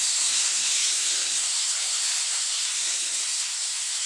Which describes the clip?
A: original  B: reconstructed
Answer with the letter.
B